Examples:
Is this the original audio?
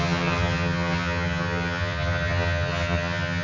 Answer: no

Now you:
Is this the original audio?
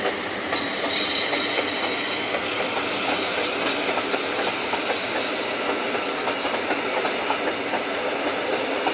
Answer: yes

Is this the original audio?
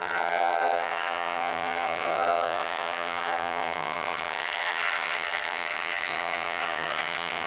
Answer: no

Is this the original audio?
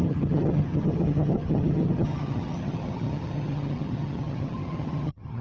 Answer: no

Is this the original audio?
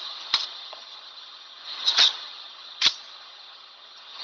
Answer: no